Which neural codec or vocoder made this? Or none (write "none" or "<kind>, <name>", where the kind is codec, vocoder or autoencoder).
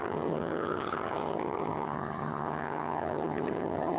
vocoder, HiFi-GAN